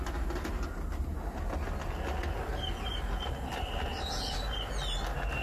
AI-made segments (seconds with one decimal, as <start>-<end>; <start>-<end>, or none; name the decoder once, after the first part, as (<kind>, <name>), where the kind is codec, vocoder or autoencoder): 3.9-4.7 (vocoder, BigVGAN v2)